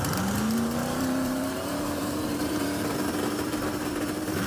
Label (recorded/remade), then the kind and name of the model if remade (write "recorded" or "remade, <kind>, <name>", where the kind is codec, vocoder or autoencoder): remade, vocoder, BigVGAN v2